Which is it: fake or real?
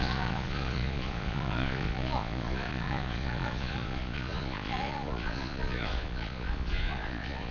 fake